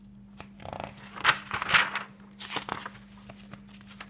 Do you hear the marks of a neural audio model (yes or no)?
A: no